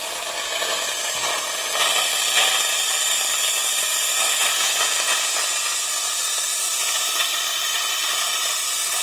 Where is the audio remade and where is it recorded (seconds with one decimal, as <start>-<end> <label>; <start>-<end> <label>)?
0.0-1.9 recorded; 1.9-2.5 remade; 2.5-3.6 recorded; 3.6-7.1 remade; 7.1-9.0 recorded